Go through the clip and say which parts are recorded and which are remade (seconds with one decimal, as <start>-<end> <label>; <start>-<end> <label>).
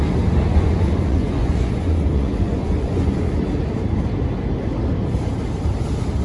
0.0-0.5 recorded; 0.5-3.2 remade; 3.2-6.2 recorded